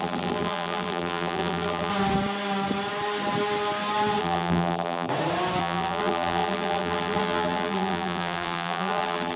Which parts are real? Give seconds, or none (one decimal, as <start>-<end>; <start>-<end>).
1.9-4.2; 5.1-5.6